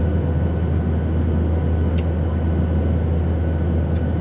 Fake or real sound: real